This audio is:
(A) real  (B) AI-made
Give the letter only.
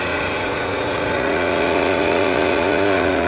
B